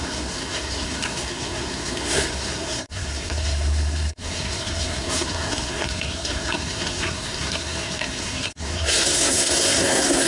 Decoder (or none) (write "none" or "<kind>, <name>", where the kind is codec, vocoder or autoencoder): codec, SNAC